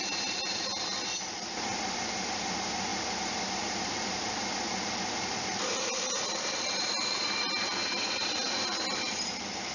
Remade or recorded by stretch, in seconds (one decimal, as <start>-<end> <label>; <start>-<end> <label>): 0.0-0.7 remade; 0.7-1.4 recorded; 1.4-9.7 remade